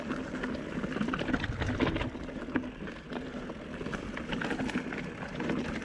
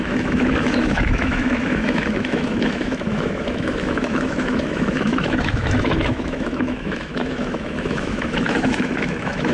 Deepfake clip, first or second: second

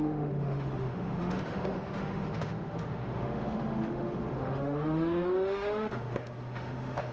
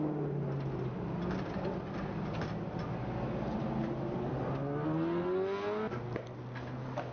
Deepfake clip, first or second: first